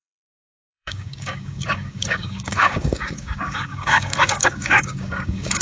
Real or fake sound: fake